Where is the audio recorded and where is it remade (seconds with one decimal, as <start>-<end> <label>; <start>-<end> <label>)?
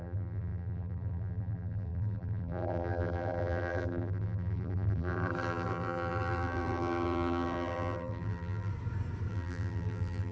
0.0-8.7 remade; 8.7-9.3 recorded; 9.3-10.3 remade